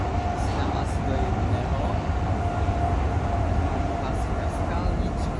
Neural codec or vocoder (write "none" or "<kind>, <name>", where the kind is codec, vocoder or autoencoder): none